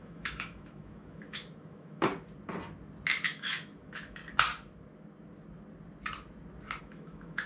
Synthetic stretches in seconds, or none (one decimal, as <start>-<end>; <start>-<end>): 0.0-2.1; 3.2-4.2; 6.8-7.5